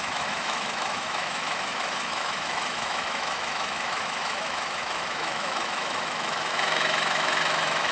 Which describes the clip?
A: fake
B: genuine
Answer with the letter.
A